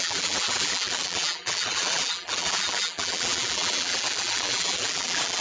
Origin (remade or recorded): remade